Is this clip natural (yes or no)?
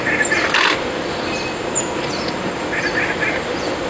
yes